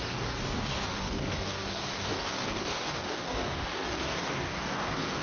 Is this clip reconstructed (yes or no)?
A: yes